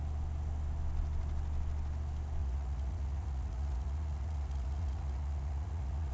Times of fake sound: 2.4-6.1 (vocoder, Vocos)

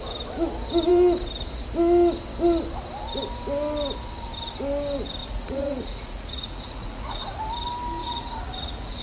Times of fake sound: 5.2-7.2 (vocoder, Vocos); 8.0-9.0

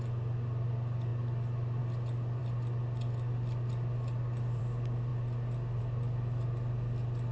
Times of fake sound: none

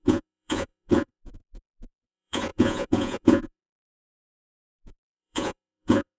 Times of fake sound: 0.0-6.2 (vocoder, Vocos)

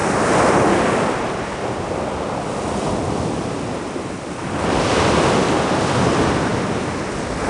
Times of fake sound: none

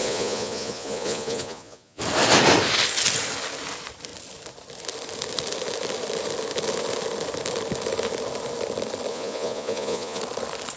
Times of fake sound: 0.0-2.0 (vocoder, Vocos); 9.1-10.2

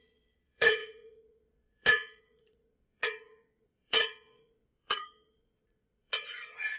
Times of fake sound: 0.0-6.8 (vocoder, Vocos)

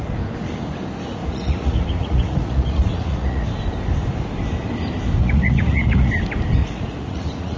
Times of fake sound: 1.2-3.5 (vocoder, Vocos); 5.2-6.1; 6.6-7.6